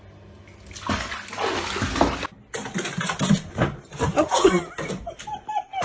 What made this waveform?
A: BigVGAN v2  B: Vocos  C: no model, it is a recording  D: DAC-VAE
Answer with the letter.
C